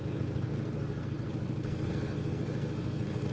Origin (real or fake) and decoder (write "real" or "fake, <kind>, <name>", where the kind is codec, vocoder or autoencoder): fake, codec, SNAC